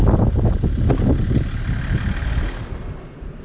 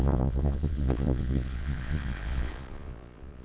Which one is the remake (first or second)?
second